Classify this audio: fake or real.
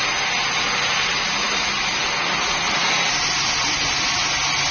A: real